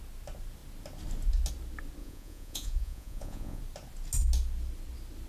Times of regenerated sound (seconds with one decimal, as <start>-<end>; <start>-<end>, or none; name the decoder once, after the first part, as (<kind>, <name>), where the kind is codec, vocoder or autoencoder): 2.0-3.6 (vocoder, Vocos)